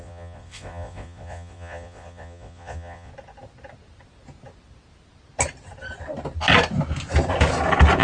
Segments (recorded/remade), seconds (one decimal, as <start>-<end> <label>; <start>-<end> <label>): 0.0-3.1 remade; 3.1-8.0 recorded